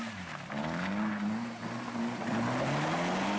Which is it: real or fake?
real